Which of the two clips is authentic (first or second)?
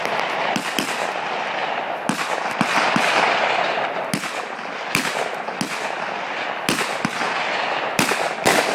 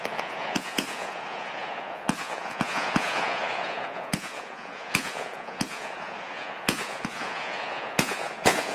first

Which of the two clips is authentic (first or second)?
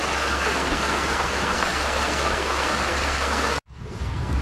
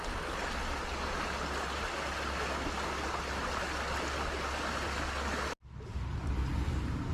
second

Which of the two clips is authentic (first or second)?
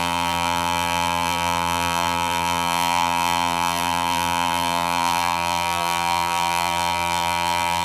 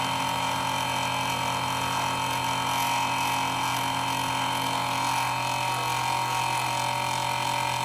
second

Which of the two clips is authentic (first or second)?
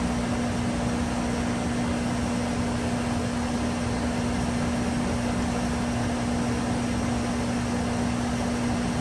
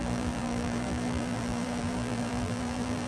first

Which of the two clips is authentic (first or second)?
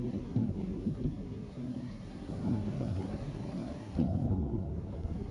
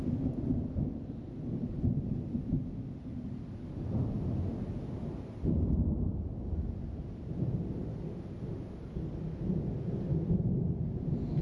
second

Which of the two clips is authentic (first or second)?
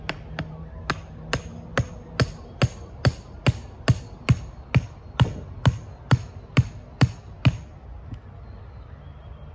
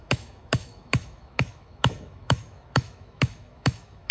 first